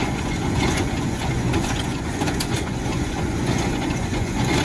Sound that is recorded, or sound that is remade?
remade